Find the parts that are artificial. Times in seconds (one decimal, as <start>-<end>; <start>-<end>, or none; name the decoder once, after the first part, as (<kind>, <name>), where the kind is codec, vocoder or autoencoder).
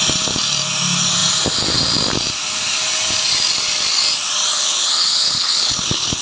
4.5-6.2 (codec, HILCodec)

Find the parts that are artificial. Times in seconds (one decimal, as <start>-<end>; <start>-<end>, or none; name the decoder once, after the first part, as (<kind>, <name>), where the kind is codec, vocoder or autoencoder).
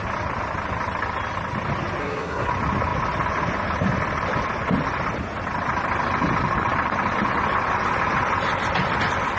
2.0-2.5 (codec, SNAC)